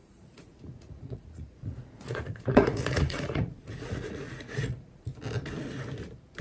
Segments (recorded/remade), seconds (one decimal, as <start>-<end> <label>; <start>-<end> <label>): 0.0-5.1 remade; 5.1-6.4 recorded